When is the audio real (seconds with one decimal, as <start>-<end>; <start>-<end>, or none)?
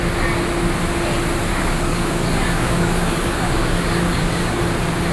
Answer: 0.0-1.5; 4.6-5.1